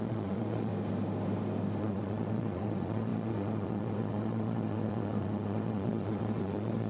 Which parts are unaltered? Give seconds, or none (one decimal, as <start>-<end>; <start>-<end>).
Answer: 0.7-1.8